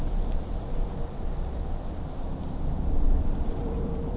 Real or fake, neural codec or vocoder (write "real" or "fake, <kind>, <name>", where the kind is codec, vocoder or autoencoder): fake, vocoder, BigVGAN v2